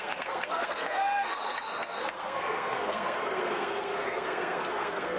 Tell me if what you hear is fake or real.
fake